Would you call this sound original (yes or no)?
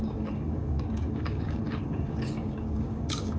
no